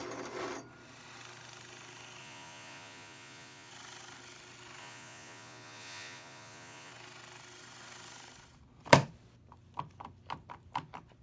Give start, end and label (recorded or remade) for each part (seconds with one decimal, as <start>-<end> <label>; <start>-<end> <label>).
0.0-2.2 recorded; 2.2-3.7 remade; 3.7-4.8 recorded; 4.8-6.9 remade; 6.9-11.2 recorded